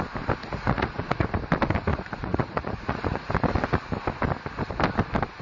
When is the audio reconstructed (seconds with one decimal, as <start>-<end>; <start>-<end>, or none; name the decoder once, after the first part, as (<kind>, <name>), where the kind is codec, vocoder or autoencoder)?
0.4-1.3 (vocoder, Vocos); 1.9-3.3